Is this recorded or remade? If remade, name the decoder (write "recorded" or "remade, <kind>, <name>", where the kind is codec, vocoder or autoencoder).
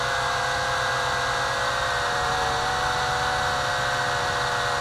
recorded